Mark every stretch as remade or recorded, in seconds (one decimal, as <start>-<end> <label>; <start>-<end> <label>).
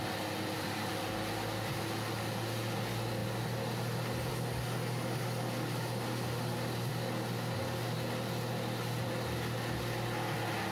0.0-10.7 recorded